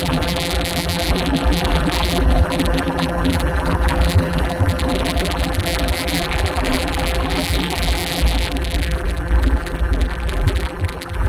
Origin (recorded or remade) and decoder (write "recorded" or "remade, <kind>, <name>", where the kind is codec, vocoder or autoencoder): remade, vocoder, BigVGAN v2